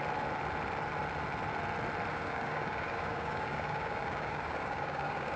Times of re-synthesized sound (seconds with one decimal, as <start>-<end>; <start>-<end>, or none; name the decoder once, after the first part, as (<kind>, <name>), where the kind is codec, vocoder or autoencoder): 2.1-5.4 (codec, DAC)